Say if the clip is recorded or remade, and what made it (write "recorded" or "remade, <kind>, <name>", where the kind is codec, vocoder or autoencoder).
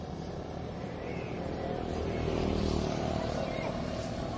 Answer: remade, vocoder, BigVGAN v2